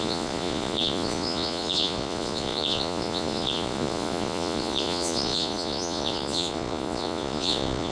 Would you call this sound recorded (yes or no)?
no